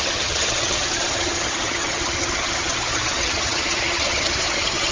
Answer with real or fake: fake